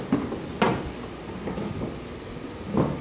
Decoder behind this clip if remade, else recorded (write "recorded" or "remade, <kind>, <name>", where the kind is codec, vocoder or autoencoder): recorded